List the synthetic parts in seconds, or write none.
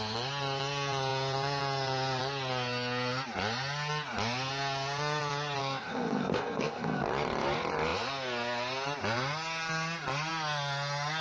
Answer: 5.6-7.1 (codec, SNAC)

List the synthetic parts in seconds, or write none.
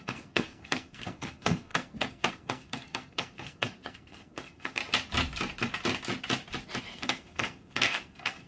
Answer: 0.0-4.8 (codec, SNAC); 6.8-8.5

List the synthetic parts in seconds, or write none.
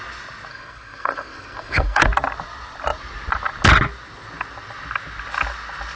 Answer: 0.5-2.0 (codec, SNAC)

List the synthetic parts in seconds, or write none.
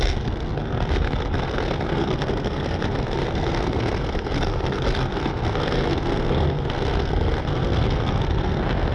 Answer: 0.0-8.9 (codec, SNAC)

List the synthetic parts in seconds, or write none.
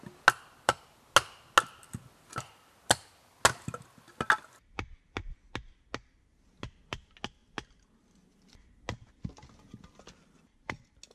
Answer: none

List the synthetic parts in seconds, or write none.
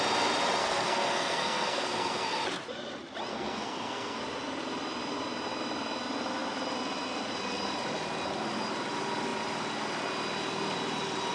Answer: 0.6-2.4 (codec, SNAC); 3.3-4.2